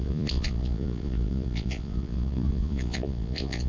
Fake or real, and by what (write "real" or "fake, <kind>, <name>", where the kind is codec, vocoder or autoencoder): fake, vocoder, Vocos